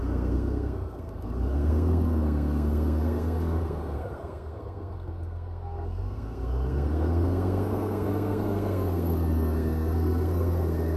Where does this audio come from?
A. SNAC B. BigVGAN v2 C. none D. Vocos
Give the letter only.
A